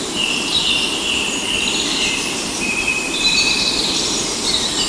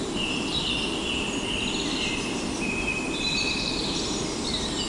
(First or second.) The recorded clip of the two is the second